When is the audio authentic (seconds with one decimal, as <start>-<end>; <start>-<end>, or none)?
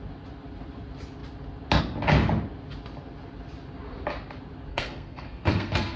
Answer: 0.0-4.7